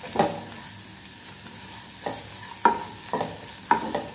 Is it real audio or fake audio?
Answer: real